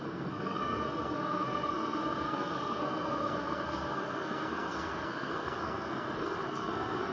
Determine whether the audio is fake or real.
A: fake